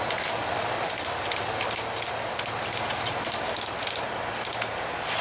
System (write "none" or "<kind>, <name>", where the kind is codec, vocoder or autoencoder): none